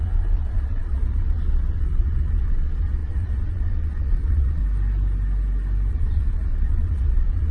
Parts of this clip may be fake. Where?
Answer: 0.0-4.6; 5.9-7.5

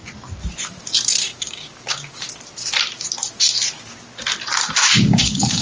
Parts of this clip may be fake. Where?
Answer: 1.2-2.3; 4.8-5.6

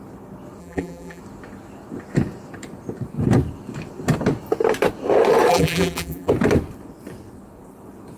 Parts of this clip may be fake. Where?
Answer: 0.6-1.2; 5.5-6.3

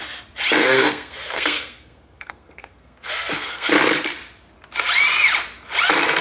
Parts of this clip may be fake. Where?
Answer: 0.6-3.7

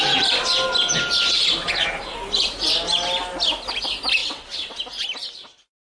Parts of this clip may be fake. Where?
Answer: 4.2-4.8

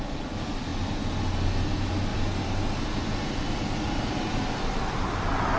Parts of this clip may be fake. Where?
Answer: 0.7-1.2; 2.1-4.4